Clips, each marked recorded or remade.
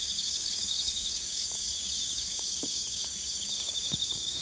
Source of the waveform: remade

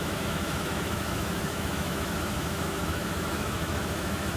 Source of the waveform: remade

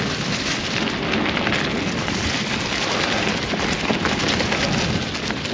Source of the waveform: recorded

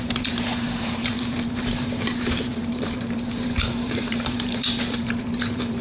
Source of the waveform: remade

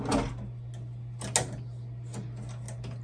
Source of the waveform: recorded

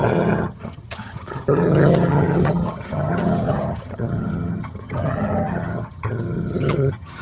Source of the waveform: remade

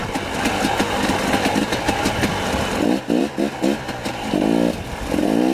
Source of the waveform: recorded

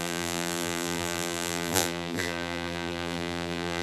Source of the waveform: remade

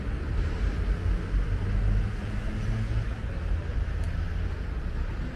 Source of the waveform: recorded